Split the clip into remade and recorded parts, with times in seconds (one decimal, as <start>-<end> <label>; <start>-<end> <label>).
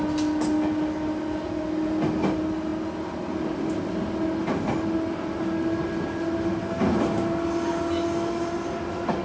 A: 0.0-9.2 recorded